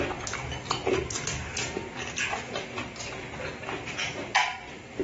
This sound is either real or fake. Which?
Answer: real